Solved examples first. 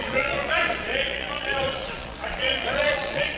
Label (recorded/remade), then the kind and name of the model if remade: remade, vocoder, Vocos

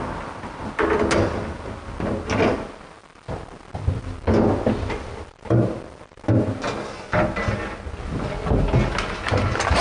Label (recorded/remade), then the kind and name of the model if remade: recorded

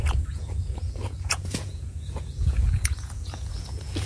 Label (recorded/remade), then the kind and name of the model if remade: remade, vocoder, Vocos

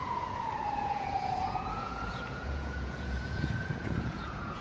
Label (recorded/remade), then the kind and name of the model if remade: remade, vocoder, Vocos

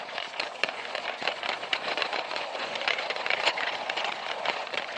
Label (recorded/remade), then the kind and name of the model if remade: remade, vocoder, Vocos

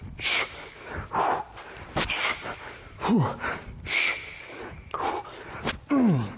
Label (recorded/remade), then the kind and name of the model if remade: recorded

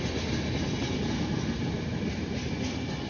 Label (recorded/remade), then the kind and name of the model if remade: recorded